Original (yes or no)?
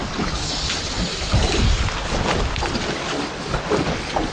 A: yes